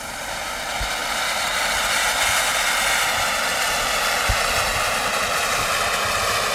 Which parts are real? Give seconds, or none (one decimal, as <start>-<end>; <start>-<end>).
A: 0.0-6.5